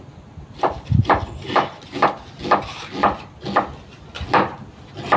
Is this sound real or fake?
real